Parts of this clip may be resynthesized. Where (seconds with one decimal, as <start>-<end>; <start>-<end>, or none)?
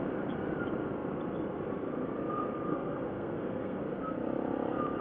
2.7-3.8